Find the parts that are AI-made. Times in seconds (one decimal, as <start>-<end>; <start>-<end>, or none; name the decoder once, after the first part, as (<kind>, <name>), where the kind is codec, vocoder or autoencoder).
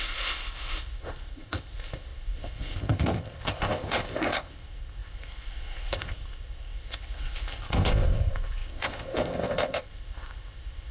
0.0-10.9 (codec, ZipCodec)